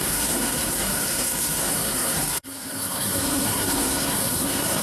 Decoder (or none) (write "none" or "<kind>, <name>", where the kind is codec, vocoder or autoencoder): codec, SNAC